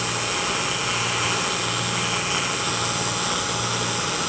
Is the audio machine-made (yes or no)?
no